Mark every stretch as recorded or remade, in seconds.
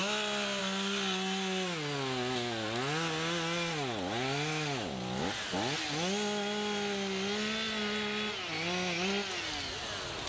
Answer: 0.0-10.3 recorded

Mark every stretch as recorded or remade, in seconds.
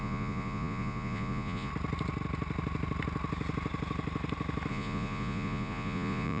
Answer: 0.0-1.7 remade; 1.7-4.7 recorded; 4.7-6.4 remade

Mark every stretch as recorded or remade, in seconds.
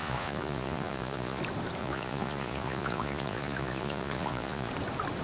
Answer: 0.0-1.4 remade; 1.4-1.8 recorded; 1.8-4.7 remade; 4.7-5.2 recorded